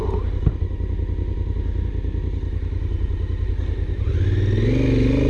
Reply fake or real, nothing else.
real